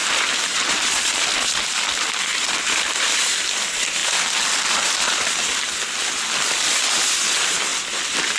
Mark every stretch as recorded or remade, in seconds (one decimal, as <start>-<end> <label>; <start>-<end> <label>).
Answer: 0.0-8.4 recorded